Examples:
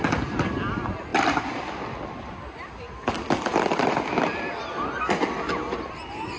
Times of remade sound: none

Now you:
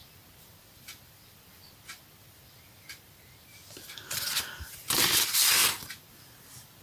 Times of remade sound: 0.0-5.6; 6.1-6.8

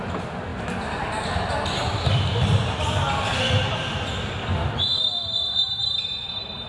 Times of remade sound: 3.6-4.3

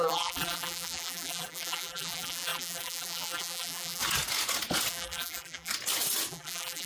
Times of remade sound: 0.0-4.0; 4.9-5.7; 6.3-6.9

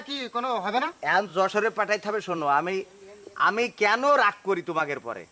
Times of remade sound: 0.0-1.3; 2.1-2.9; 4.8-5.3